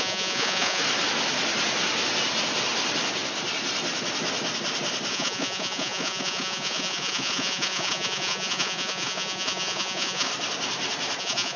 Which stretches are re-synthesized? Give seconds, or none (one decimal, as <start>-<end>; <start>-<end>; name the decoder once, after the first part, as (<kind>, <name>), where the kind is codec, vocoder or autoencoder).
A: 0.0-0.8 (vocoder, Vocos); 5.1-10.3; 11.2-11.6